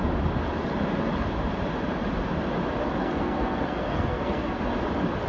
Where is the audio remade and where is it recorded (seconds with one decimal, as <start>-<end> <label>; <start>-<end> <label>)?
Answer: 0.0-3.0 recorded; 3.0-4.6 remade; 4.6-5.3 recorded